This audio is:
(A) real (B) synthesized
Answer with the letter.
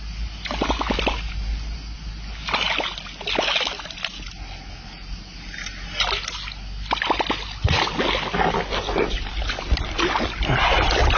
A